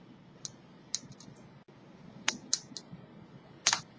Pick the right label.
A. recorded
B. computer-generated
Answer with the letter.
A